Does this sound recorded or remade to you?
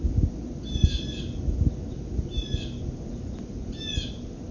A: recorded